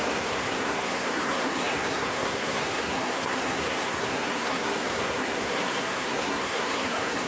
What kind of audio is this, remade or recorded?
remade